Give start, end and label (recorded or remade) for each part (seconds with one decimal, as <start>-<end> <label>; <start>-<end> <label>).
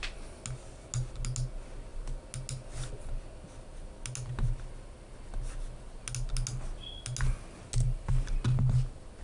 0.0-9.2 recorded